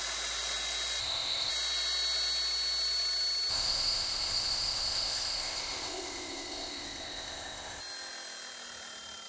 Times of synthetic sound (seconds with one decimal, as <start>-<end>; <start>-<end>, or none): 1.0-1.5; 3.5-7.8